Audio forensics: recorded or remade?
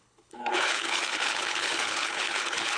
remade